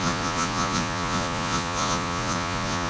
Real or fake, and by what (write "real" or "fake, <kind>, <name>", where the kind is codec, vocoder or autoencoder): fake, vocoder, Vocos